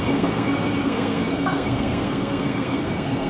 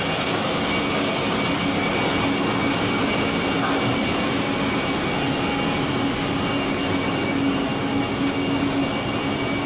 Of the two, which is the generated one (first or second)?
first